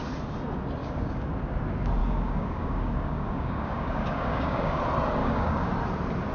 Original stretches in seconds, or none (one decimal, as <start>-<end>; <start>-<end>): 0.0-0.8; 1.3-2.0; 4.8-5.2; 5.7-6.3